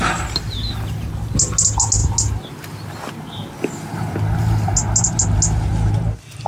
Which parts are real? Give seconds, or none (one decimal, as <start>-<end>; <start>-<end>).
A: 0.0-6.5